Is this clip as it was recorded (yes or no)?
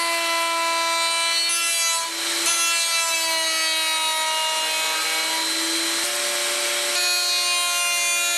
yes